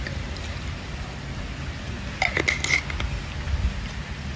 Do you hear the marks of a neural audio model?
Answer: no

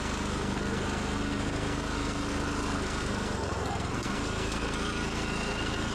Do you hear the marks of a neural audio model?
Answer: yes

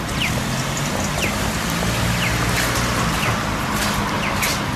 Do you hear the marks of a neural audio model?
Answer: no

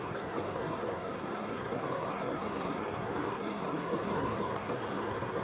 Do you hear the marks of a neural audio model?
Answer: yes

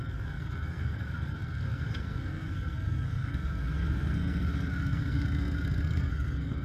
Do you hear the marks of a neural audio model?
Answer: yes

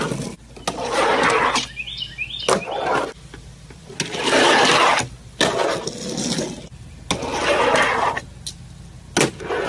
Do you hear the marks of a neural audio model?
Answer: no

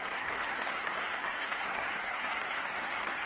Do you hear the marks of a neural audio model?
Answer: yes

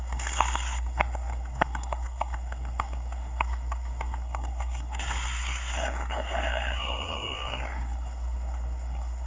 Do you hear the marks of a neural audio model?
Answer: yes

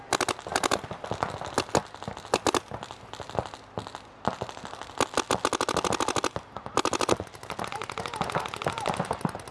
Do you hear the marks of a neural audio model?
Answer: no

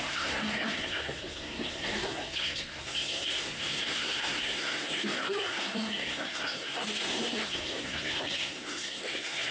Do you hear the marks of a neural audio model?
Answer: yes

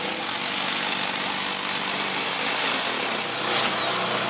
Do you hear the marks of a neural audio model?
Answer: no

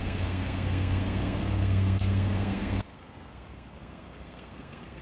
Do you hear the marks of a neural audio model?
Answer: yes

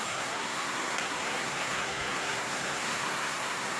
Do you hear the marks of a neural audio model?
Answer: yes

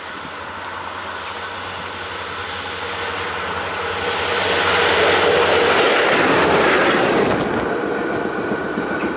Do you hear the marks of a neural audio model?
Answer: no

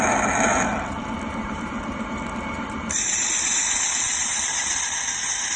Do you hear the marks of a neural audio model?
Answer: no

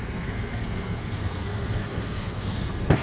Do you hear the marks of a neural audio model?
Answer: yes